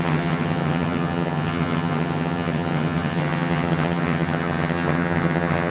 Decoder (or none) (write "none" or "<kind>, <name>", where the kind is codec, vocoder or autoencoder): vocoder, HiFi-GAN